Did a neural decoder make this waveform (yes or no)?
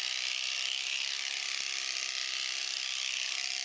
yes